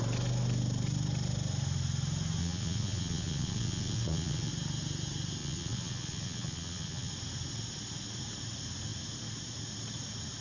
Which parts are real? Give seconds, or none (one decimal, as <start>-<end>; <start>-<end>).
0.0-2.4; 4.5-5.4; 7.1-10.4

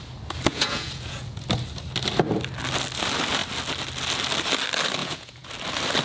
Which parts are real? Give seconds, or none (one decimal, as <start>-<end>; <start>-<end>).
0.0-0.5; 1.4-5.0; 5.5-6.0

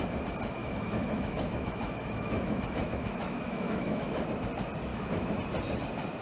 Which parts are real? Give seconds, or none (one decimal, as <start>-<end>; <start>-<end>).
0.0-0.6; 4.3-4.9; 5.4-6.2